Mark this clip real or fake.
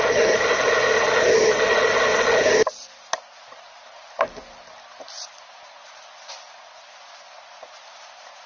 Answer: real